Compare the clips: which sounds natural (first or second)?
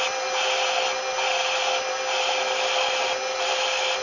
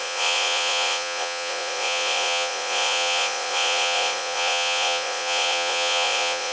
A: first